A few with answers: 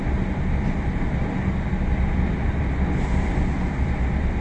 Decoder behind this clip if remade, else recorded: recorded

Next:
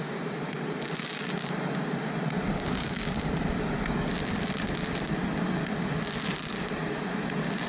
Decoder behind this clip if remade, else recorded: recorded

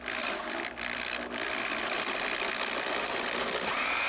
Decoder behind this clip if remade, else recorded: recorded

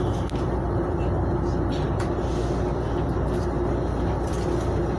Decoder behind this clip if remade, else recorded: recorded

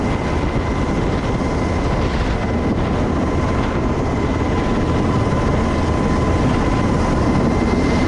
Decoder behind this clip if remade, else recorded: recorded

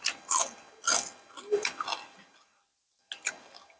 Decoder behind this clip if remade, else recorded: recorded